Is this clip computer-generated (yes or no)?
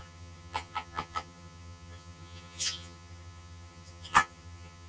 yes